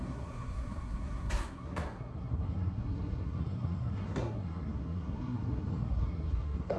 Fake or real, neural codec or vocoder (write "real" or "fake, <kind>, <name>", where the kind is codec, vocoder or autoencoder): fake, codec, SNAC